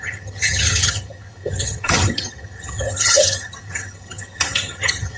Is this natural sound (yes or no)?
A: no